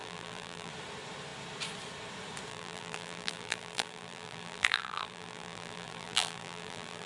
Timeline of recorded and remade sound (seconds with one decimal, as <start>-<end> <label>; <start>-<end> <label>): 0.0-0.7 remade; 0.7-2.5 recorded; 2.5-7.1 remade